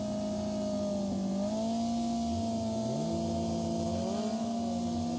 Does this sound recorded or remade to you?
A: recorded